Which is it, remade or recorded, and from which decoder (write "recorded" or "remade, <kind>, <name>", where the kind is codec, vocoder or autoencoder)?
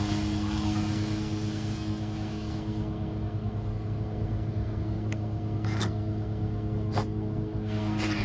remade, codec, SNAC